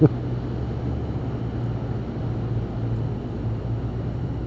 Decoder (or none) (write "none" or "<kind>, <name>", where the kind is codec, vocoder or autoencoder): none